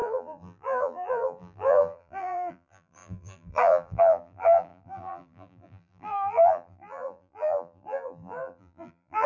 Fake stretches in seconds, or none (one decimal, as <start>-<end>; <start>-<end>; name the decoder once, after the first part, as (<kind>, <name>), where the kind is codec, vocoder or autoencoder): 0.0-9.3 (vocoder, BigVGAN v2)